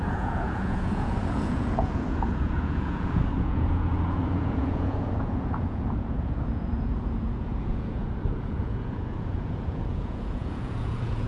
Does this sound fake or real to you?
fake